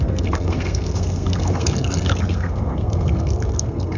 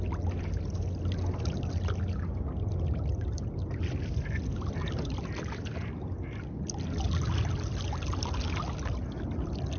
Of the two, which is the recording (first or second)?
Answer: second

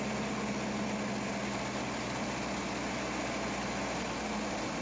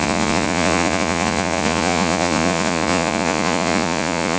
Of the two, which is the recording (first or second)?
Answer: first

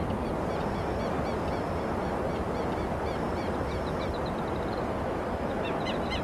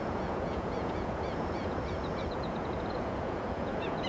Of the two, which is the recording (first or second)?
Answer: first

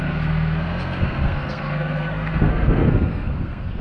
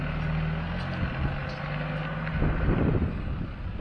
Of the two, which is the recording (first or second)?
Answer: second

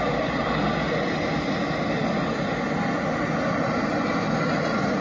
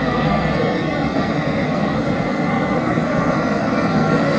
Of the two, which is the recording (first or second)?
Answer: first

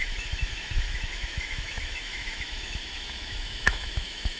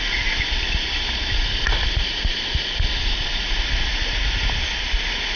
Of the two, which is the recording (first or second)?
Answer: second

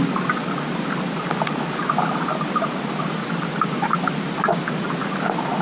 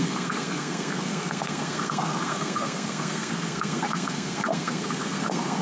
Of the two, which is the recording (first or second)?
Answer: first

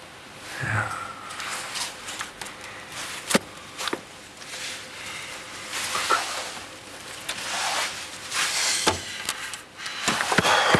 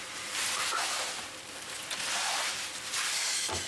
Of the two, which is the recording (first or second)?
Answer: first